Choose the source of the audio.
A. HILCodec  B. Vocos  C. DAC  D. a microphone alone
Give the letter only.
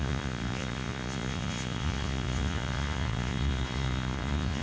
B